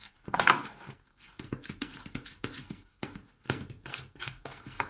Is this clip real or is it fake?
fake